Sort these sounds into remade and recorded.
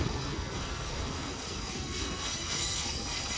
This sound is remade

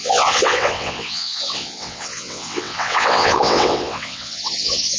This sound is remade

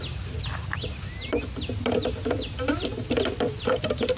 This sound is recorded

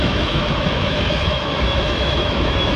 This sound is remade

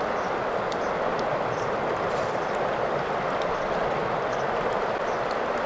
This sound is recorded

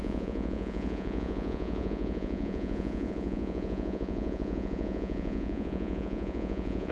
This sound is remade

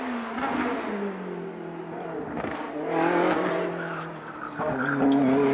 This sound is recorded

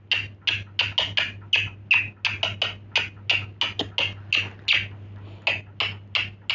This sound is recorded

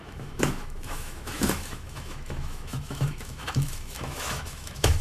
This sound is remade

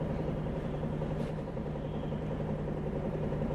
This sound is remade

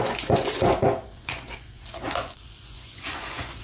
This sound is remade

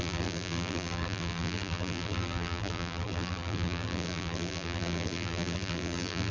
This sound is remade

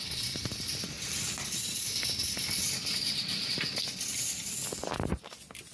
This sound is recorded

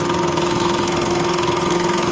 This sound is remade